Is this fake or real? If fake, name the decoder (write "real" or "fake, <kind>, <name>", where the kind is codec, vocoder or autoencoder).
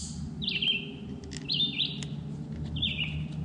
real